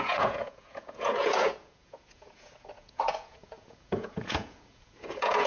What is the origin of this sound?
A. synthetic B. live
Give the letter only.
A